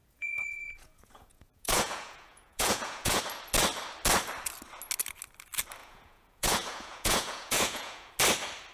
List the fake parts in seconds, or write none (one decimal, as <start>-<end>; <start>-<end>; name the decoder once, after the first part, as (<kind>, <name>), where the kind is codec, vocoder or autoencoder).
0.0-3.2 (vocoder, Vocos); 5.8-8.1